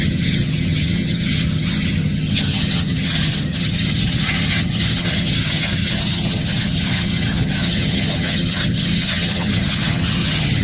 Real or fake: fake